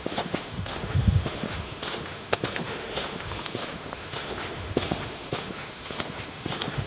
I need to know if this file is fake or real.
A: fake